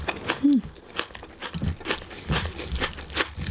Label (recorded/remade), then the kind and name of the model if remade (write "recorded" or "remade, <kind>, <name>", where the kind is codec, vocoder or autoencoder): recorded